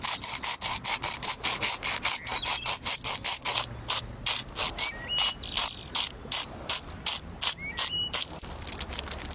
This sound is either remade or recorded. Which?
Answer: recorded